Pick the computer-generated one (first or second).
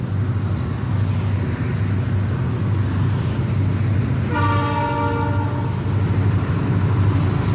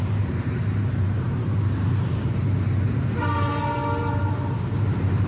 second